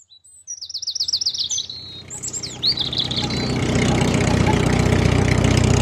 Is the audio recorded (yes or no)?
yes